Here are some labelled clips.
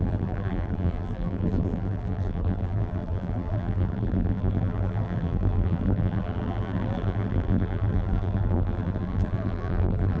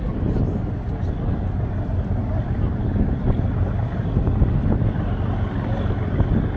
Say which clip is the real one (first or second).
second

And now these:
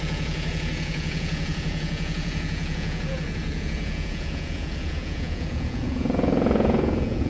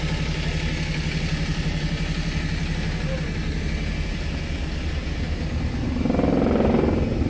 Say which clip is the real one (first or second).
second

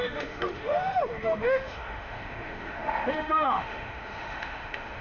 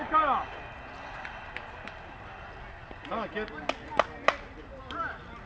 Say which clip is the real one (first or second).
second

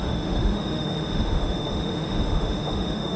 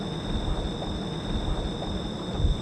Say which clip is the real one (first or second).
second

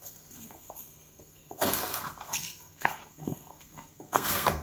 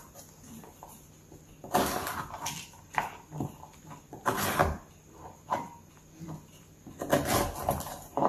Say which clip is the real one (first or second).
second